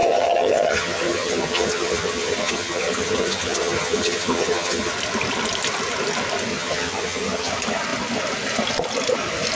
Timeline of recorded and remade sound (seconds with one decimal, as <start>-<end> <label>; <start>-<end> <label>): 0.0-4.9 remade; 4.9-6.5 recorded; 6.5-7.5 remade; 7.5-9.5 recorded